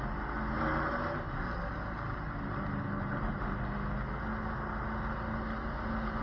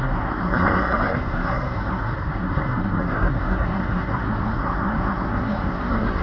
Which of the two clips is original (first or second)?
first